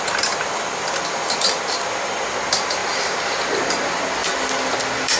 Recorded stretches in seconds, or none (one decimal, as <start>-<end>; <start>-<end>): none